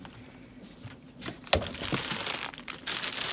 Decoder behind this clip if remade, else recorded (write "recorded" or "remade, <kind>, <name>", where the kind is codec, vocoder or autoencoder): recorded